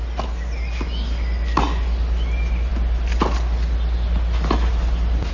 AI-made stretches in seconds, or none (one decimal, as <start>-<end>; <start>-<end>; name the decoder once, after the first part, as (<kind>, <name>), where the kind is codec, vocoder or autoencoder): none